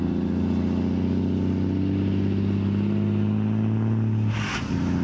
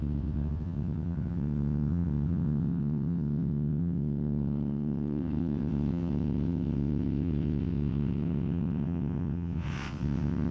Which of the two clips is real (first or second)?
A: first